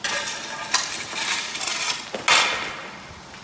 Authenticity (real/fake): real